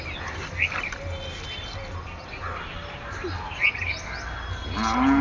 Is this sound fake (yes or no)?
no